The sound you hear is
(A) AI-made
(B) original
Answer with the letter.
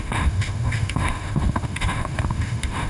A